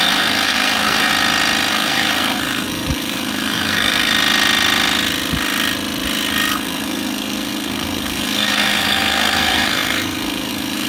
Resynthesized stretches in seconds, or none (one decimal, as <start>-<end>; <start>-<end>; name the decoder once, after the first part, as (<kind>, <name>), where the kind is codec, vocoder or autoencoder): 0.0-1.1 (codec, SNAC); 1.7-4.1; 6.5-10.9